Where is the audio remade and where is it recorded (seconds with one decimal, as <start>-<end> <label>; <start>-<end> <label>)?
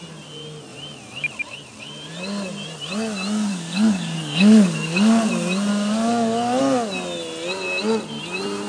0.0-3.5 recorded; 3.5-5.3 remade; 5.3-5.7 recorded; 5.7-6.6 remade; 6.6-8.7 recorded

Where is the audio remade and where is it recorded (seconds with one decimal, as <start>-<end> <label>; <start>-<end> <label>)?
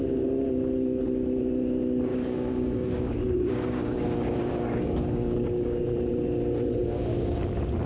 0.0-2.1 recorded; 2.1-5.8 remade; 5.8-6.8 recorded; 6.8-7.4 remade; 7.4-7.9 recorded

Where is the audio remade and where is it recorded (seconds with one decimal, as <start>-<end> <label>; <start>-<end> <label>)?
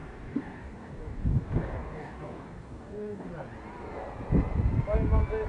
0.0-3.3 remade; 3.3-5.5 recorded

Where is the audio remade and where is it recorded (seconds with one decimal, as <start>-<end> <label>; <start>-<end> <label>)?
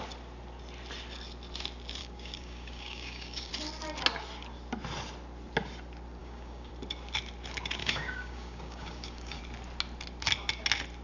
0.0-2.0 recorded; 2.0-3.5 remade; 3.5-6.2 recorded; 6.2-6.7 remade; 6.7-7.8 recorded; 7.8-9.4 remade; 9.4-11.0 recorded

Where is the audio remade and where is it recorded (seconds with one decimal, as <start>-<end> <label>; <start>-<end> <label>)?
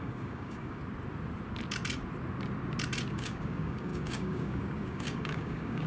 0.0-0.8 remade; 0.8-3.1 recorded; 3.1-5.9 remade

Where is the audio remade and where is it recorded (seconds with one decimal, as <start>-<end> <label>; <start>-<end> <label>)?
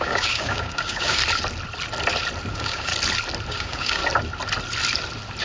0.0-1.2 remade; 1.2-2.5 recorded; 2.5-2.9 remade; 2.9-3.5 recorded; 3.5-4.0 remade; 4.0-5.4 recorded